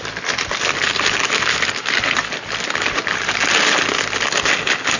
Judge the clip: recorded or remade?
recorded